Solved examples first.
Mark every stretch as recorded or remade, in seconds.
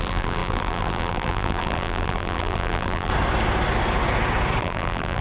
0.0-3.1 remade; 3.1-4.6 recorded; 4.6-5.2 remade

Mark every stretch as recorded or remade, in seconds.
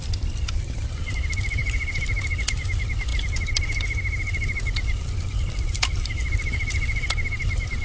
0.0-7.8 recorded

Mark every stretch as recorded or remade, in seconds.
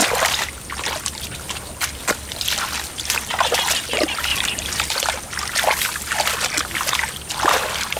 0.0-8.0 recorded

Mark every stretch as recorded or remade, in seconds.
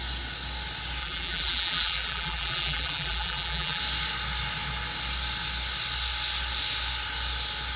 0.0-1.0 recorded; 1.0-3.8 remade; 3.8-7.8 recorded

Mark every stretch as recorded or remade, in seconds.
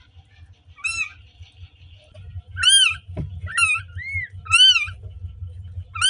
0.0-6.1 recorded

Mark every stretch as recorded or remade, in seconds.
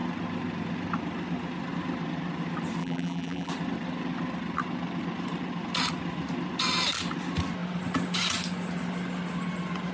0.0-2.8 recorded; 2.8-3.5 remade; 3.5-9.9 recorded